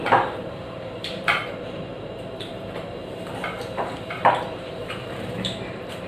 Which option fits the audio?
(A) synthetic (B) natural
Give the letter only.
A